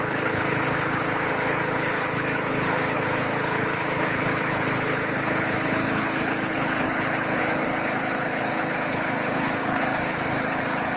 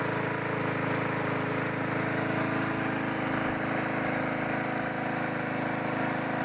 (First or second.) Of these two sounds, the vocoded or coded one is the first